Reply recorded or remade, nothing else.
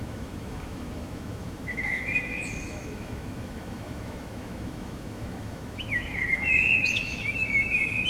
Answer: remade